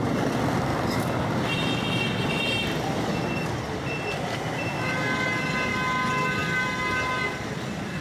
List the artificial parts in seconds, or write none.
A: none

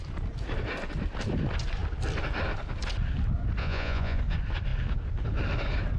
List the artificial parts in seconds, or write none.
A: 3.6-4.2 (vocoder, Vocos)

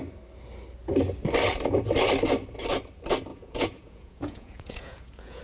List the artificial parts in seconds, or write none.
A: 3.3-5.4 (vocoder, Vocos)

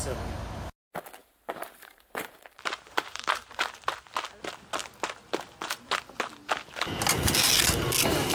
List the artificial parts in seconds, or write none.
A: 1.2-3.8 (vocoder, BigVGAN v2)

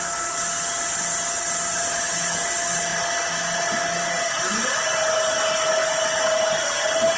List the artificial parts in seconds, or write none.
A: none

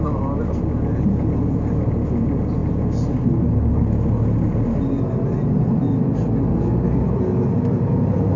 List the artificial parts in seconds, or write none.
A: none